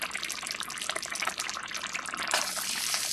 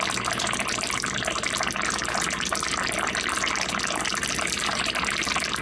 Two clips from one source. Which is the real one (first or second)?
second